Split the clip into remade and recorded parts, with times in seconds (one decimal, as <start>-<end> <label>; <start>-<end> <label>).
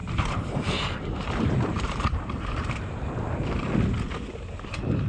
0.0-3.1 remade; 3.1-5.1 recorded